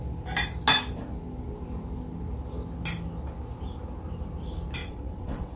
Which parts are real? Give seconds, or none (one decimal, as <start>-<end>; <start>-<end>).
0.0-4.8